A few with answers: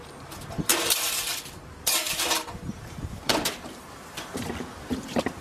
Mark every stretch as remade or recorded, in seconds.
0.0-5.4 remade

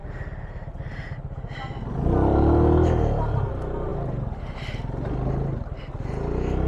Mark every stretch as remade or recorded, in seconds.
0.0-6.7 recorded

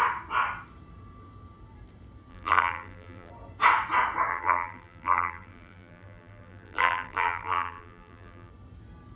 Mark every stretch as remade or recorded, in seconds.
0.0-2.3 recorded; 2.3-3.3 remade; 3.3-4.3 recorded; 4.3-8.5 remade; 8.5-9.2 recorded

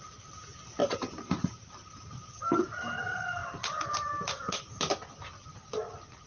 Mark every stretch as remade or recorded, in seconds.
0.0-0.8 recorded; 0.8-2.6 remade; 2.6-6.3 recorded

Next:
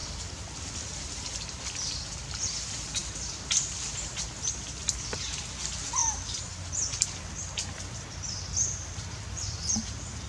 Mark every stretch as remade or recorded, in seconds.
0.0-3.0 recorded; 3.0-4.0 remade; 4.0-6.0 recorded; 6.0-10.3 remade